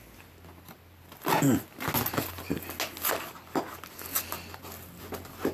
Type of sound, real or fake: real